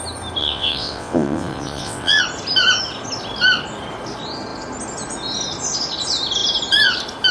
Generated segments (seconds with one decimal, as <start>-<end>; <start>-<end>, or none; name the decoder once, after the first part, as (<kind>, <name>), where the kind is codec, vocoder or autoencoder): 0.4-2.2 (vocoder, WaveNeXt)